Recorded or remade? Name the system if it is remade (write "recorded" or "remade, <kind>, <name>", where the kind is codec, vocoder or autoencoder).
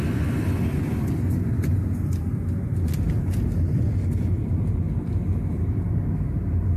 recorded